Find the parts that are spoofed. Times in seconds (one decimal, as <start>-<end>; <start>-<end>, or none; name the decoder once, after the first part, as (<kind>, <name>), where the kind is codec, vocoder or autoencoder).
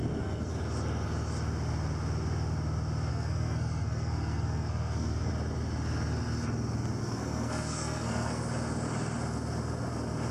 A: 0.0-0.5 (codec, SNAC); 3.1-5.3; 7.0-8.4